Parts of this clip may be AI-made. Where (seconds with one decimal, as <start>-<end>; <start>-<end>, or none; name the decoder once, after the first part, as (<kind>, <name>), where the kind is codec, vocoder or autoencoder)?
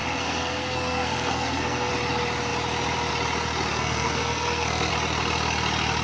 0.0-1.9 (codec, SNAC); 3.7-4.9